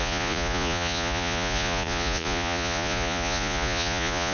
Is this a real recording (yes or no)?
no